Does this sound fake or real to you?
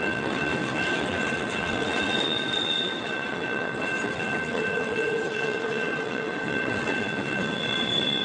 fake